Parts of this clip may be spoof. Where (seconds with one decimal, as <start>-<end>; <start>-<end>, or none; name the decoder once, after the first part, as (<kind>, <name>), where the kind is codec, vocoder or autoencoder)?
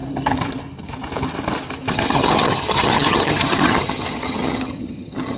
1.9-5.4 (vocoder, HiFi-GAN)